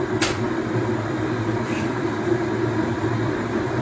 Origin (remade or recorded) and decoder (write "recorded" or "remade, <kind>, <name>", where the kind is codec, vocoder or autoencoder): remade, vocoder, BigVGAN v2